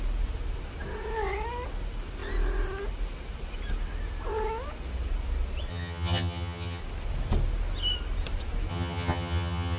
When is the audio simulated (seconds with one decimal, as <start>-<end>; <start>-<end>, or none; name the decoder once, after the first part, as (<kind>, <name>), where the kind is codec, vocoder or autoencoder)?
5.7-6.8 (vocoder, HiFi-GAN); 8.7-9.8